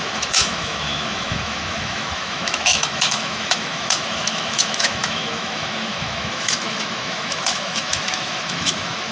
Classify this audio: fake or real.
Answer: fake